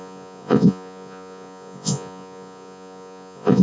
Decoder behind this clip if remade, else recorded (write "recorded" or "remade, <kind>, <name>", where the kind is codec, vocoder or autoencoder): remade, vocoder, Vocos